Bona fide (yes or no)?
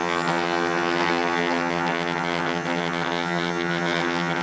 no